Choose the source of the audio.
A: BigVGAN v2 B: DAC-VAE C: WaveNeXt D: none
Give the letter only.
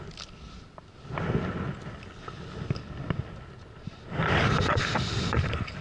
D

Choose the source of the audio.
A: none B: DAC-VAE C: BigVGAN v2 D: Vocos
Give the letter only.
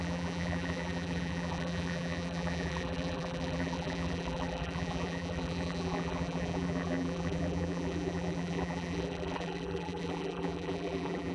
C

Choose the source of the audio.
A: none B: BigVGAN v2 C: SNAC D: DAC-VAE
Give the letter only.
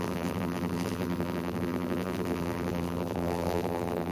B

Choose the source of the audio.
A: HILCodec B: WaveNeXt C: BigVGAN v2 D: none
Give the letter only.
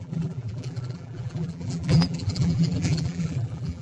C